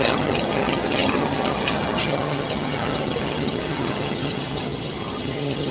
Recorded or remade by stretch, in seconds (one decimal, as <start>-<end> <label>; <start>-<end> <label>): 0.0-5.7 remade